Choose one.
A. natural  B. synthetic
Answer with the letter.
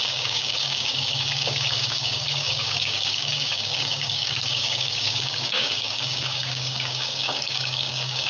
B